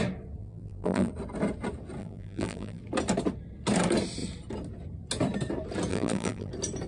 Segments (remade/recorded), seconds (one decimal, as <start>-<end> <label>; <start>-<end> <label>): 0.0-0.4 recorded; 0.4-1.1 remade; 1.1-2.0 recorded; 2.0-2.8 remade; 2.8-5.9 recorded; 5.9-6.5 remade; 6.5-6.9 recorded